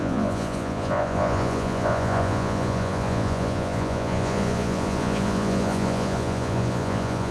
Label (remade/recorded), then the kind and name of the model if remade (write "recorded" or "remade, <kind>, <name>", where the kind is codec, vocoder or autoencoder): remade, vocoder, Vocos